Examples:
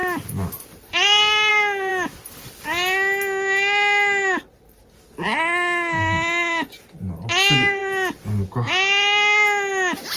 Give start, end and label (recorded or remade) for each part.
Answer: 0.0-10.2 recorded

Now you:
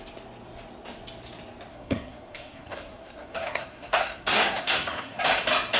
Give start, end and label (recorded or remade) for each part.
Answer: 0.0-1.7 recorded; 1.7-5.2 remade; 5.2-5.8 recorded

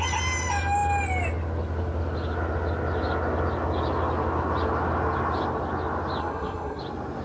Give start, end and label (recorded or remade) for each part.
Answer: 0.0-6.2 recorded; 6.2-6.8 remade; 6.8-7.2 recorded

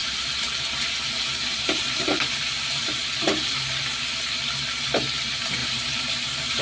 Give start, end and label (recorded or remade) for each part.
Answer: 0.0-3.8 remade; 3.8-5.6 recorded; 5.6-6.6 remade

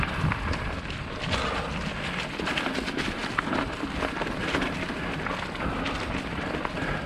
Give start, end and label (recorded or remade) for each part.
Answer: 0.0-7.1 recorded

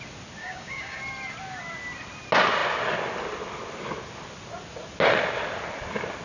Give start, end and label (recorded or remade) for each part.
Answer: 0.0-0.4 recorded; 0.4-1.0 remade; 1.0-6.2 recorded

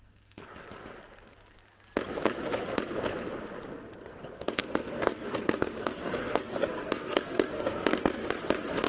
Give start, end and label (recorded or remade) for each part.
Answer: 0.0-0.5 remade; 0.5-3.7 recorded; 3.7-8.2 remade; 8.2-8.9 recorded

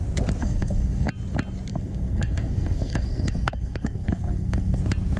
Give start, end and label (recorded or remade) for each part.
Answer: 0.0-0.4 recorded; 0.4-1.1 remade; 1.1-1.7 recorded; 1.7-4.8 remade; 4.8-5.2 recorded